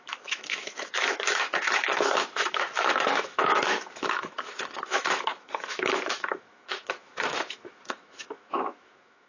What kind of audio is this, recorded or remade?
remade